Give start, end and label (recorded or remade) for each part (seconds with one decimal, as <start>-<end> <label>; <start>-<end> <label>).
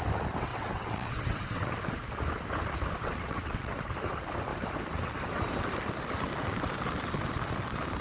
0.0-0.5 recorded; 0.5-1.7 remade; 1.7-3.0 recorded; 3.0-3.7 remade; 3.7-8.0 recorded